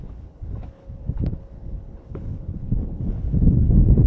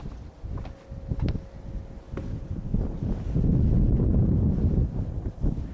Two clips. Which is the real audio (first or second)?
second